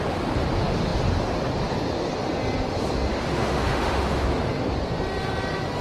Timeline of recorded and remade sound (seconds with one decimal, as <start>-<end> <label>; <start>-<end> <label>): 0.0-3.1 recorded; 3.1-4.5 remade; 4.5-5.8 recorded